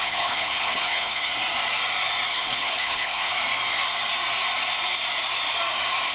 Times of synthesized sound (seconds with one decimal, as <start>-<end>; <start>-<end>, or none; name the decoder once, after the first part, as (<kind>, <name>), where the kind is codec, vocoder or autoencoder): 0.0-1.3 (codec, HILCodec); 2.3-3.3